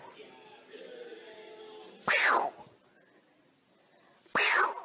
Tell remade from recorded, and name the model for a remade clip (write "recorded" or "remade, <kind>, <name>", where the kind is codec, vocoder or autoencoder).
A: recorded